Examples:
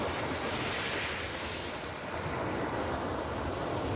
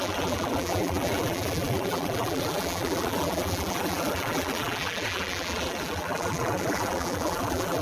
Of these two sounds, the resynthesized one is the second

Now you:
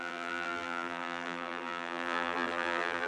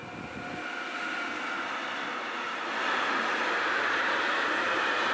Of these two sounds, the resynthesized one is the first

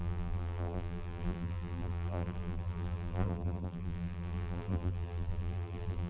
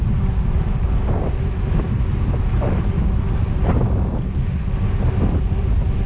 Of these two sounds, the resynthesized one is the first